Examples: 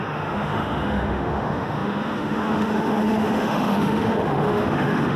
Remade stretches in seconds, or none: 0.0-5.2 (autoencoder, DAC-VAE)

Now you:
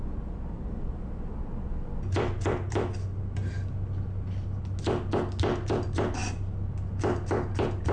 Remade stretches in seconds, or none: none

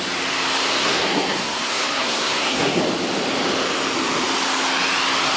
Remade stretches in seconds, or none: 0.8-2.8 (codec, SNAC)